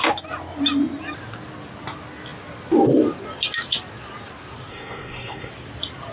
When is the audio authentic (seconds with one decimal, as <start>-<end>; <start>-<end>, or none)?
0.0-4.7; 5.5-6.1